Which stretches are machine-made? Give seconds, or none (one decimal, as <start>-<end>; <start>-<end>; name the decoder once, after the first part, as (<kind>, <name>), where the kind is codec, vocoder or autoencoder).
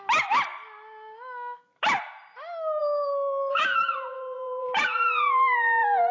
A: 3.5-5.3 (vocoder, Vocos)